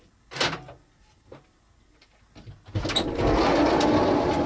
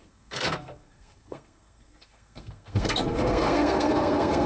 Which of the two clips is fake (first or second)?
second